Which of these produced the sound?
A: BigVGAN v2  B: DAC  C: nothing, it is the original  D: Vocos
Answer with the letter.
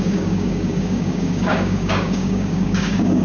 B